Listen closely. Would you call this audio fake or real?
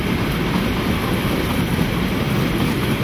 real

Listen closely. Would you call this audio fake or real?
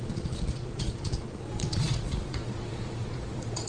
fake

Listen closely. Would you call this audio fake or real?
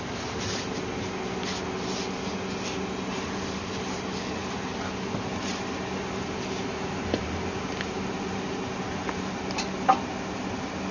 real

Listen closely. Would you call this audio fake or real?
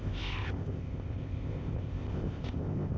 fake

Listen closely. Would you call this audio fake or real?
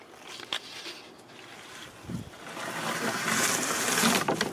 real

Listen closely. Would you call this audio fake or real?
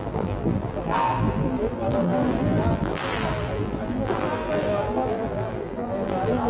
fake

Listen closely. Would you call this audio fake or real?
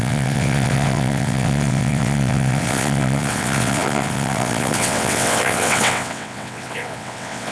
fake